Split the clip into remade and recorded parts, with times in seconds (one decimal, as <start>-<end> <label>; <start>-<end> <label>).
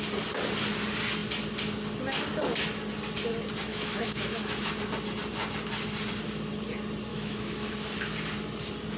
0.0-3.7 recorded; 3.7-4.7 remade; 4.7-7.1 recorded; 7.1-7.7 remade; 7.7-9.0 recorded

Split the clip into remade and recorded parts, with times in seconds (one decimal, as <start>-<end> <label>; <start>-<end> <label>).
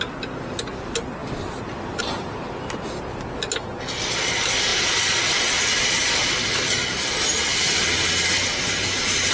0.0-9.3 recorded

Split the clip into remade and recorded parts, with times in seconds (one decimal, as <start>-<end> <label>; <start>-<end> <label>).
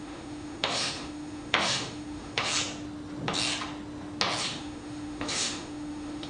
0.0-2.5 remade; 2.5-4.4 recorded; 4.4-6.3 remade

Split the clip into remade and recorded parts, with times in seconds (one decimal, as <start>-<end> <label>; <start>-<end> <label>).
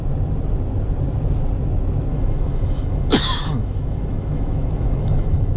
0.0-2.1 recorded; 2.1-5.6 remade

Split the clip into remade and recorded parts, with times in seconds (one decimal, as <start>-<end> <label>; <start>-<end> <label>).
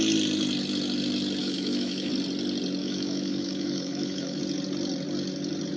0.0-1.4 recorded; 1.4-2.1 remade; 2.1-2.8 recorded; 2.8-4.4 remade; 4.4-5.8 recorded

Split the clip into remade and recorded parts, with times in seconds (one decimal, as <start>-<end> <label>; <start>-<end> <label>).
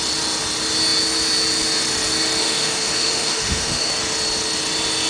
0.0-2.4 recorded; 2.4-3.9 remade; 3.9-5.1 recorded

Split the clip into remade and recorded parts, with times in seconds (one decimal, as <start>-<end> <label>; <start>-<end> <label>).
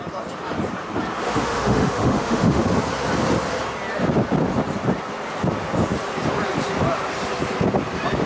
0.0-1.2 recorded; 1.2-2.6 remade; 2.6-8.3 recorded